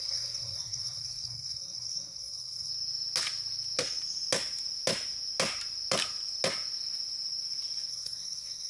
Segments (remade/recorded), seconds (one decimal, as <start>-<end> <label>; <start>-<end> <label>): 0.0-2.7 remade; 2.7-7.9 recorded; 7.9-8.7 remade